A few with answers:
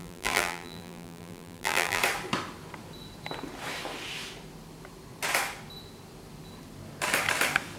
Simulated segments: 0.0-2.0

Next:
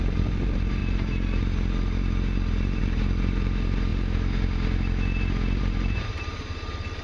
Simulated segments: 0.0-3.9; 5.6-7.0

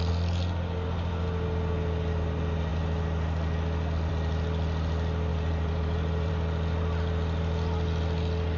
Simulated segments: 5.3-6.3

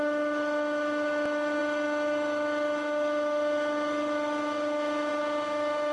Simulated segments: none

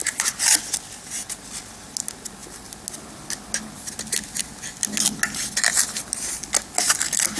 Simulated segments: none

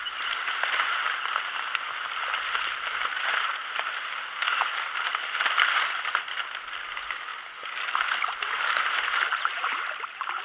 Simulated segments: 0.0-7.3; 8.3-10.4

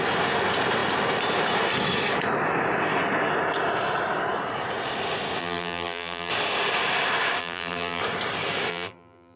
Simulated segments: 5.4-6.3; 7.4-8.0; 8.7-9.4

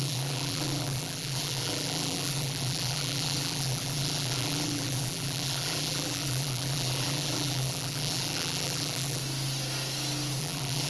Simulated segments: 0.0-9.2; 10.4-10.9